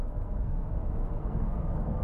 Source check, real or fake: fake